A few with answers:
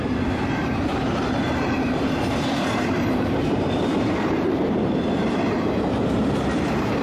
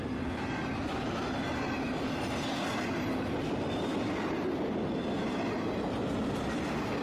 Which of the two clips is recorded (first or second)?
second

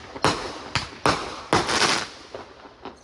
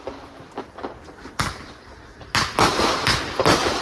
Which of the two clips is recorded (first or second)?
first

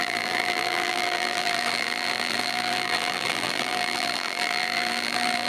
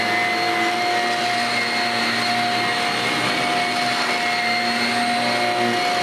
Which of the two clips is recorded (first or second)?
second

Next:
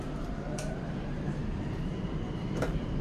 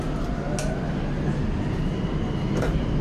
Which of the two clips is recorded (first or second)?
second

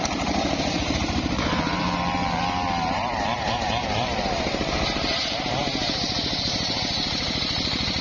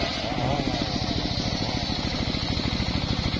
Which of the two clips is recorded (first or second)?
second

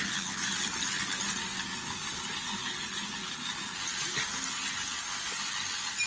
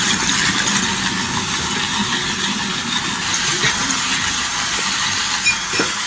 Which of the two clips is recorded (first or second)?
first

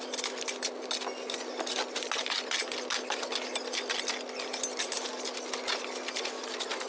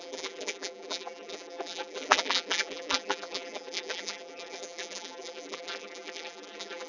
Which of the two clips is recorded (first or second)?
first